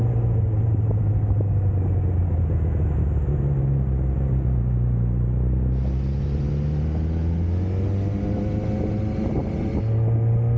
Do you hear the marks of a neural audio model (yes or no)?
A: no